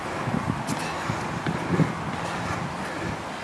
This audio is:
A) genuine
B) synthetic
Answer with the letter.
A